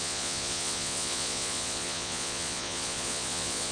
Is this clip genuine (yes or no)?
no